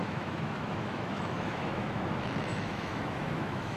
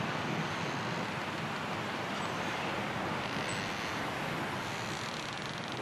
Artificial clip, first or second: first